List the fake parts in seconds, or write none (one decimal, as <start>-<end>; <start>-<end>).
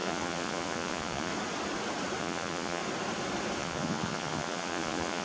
0.0-1.3; 2.2-2.8; 3.6-5.2